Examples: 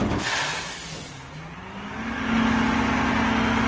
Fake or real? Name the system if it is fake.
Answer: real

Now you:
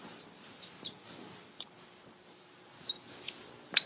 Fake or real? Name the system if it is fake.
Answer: real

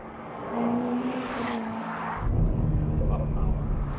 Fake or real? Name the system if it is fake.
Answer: fake, codec, DAC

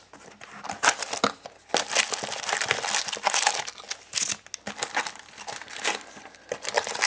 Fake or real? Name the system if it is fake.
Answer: real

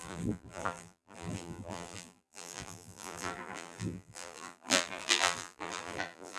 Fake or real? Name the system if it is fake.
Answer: fake, vocoder, BigVGAN v2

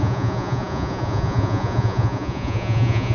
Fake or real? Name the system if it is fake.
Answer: fake, vocoder, Vocos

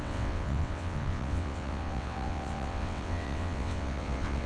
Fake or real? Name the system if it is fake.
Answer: fake, vocoder, WaveNeXt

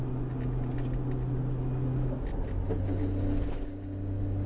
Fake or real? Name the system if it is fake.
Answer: real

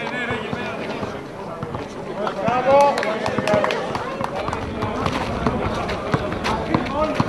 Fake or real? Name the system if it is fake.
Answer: real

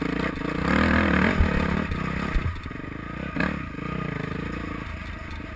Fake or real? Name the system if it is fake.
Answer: real